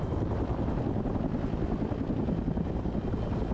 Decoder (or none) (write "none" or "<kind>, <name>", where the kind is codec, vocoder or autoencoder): none